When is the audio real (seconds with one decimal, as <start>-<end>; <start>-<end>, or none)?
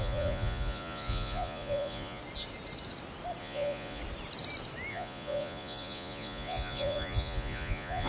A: 2.2-3.4; 4.0-4.9